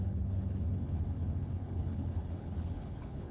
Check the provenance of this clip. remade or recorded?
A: remade